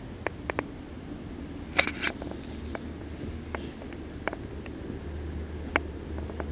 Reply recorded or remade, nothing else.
recorded